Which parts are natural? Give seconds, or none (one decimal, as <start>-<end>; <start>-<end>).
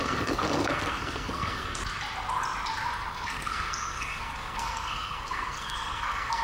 1.8-3.1